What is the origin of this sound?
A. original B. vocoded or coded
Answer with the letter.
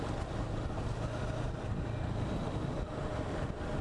A